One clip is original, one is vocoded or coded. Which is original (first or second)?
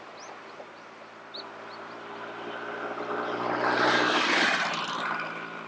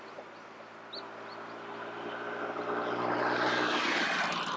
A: second